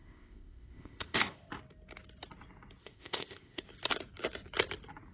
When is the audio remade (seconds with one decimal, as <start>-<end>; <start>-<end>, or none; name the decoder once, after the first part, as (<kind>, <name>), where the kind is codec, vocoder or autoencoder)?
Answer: 0.0-1.5 (codec, ZipCodec); 2.8-3.6